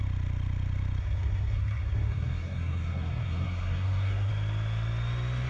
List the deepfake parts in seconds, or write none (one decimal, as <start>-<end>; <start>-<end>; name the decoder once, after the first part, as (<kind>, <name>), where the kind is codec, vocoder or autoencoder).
1.0-4.3 (codec, SNAC)